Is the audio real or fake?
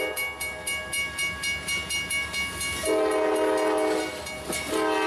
real